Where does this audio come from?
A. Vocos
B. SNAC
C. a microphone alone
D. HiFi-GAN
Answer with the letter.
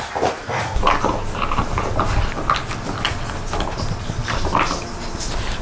C